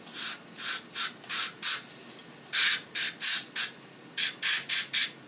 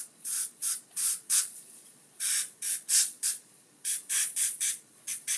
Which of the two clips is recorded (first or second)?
first